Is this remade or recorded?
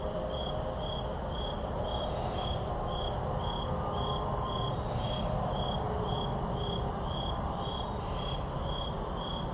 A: recorded